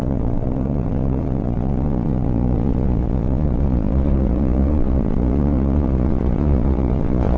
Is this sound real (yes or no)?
no